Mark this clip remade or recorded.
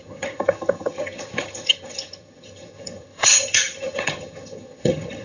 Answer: remade